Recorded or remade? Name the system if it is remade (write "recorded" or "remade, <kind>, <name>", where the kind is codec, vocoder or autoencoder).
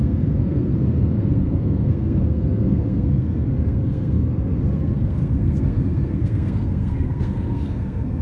remade, codec, SNAC